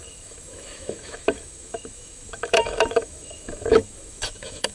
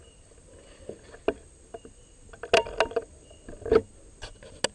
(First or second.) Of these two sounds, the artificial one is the first